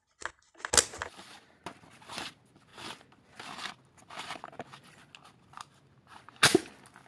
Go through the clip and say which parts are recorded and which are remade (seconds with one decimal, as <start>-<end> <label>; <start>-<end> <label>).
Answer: 0.0-7.1 recorded